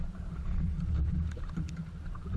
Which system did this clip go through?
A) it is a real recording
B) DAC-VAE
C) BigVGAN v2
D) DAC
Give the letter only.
C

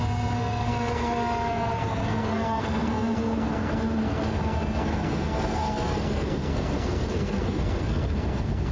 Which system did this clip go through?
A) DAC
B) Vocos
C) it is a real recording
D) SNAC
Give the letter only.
D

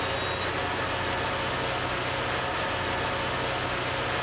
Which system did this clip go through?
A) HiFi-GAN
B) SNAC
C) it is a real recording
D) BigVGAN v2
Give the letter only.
C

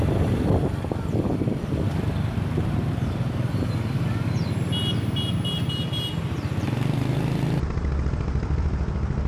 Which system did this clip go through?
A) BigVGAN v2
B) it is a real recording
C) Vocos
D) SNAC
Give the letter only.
B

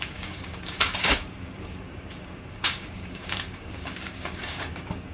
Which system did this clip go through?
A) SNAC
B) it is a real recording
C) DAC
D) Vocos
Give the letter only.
C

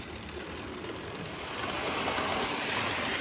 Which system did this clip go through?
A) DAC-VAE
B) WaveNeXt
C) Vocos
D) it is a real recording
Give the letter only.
D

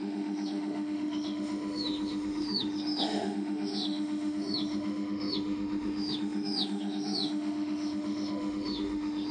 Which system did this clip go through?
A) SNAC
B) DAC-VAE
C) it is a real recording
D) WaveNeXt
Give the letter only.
B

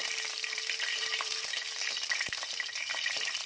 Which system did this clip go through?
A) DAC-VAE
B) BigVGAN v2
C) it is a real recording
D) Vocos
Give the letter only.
B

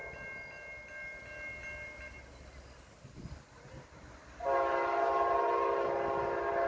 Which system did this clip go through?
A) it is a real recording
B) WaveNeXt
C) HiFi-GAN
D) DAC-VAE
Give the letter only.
A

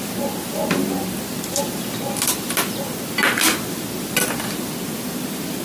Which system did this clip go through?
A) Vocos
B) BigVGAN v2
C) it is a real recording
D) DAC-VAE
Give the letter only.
C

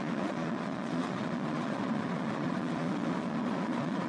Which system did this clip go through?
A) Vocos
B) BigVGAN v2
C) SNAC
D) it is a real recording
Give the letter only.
A